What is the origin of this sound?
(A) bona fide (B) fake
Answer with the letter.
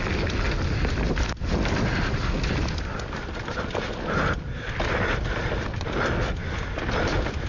A